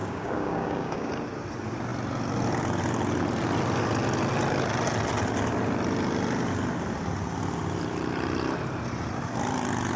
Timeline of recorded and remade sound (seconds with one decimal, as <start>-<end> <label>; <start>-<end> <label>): 0.0-1.1 remade; 1.1-10.0 recorded